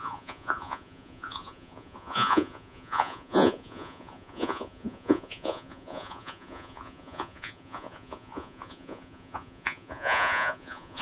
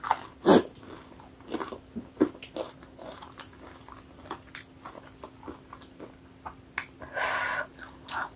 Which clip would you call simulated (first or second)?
first